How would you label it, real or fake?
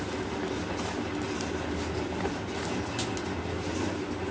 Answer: real